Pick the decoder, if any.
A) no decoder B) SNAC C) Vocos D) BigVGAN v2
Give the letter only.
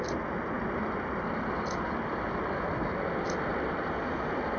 A